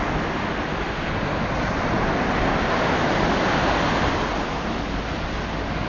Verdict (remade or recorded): recorded